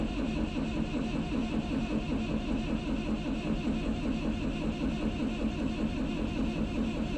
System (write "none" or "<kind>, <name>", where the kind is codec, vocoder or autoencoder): none